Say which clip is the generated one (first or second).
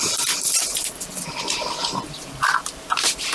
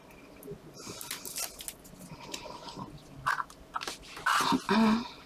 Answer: first